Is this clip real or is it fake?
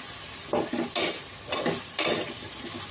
real